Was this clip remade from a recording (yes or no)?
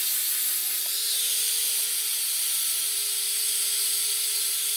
no